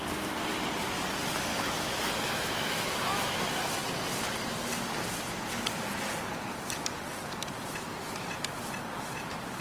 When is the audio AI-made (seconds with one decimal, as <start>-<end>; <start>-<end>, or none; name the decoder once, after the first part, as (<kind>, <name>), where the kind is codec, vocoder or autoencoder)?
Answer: 1.5-3.4 (autoencoder, DAC-VAE)